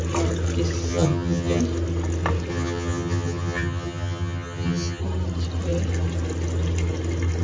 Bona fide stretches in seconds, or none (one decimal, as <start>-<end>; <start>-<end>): 0.0-0.9; 1.6-2.5; 5.0-7.4